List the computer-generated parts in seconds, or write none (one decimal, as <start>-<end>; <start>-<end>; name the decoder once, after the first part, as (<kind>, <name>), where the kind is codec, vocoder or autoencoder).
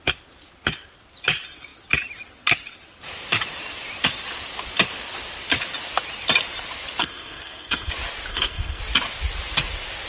7.0-7.9 (codec, SNAC); 8.3-8.8